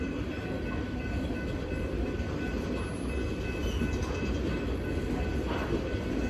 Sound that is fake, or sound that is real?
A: real